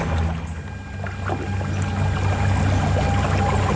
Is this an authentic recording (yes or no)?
yes